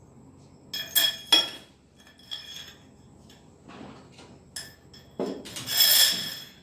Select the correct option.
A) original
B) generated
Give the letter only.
A